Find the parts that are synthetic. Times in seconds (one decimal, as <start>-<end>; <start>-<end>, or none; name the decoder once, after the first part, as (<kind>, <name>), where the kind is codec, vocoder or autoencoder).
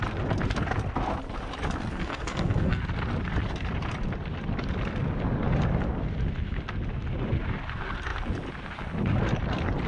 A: 1.9-2.8 (codec, SNAC)